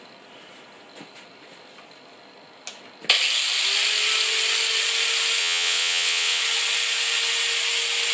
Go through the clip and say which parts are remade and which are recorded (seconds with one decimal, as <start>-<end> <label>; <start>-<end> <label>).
0.0-5.4 recorded; 5.4-6.4 remade; 6.4-8.1 recorded